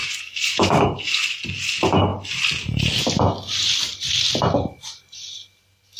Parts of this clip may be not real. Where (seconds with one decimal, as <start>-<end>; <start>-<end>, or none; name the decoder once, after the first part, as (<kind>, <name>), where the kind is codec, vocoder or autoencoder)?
0.0-1.2 (codec, DAC)